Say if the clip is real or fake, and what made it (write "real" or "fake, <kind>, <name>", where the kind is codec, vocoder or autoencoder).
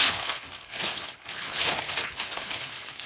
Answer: fake, codec, HILCodec